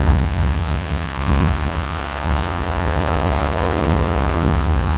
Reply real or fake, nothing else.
fake